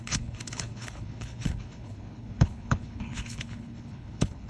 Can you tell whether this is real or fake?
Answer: fake